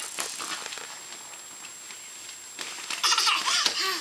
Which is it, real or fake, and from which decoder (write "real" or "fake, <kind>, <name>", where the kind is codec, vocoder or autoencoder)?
real